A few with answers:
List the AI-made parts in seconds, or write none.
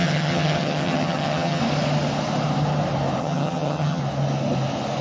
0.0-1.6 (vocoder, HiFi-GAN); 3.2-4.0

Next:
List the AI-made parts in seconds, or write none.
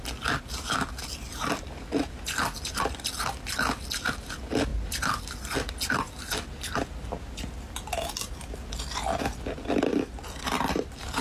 none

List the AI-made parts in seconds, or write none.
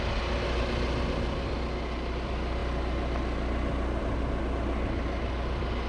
none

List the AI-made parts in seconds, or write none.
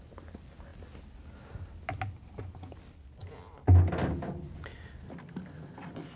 none